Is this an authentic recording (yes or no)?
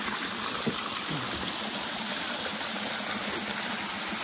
yes